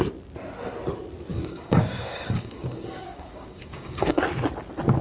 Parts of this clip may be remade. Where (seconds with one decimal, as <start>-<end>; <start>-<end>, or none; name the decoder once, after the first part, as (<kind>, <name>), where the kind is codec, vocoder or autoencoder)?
1.3-4.2 (codec, DAC)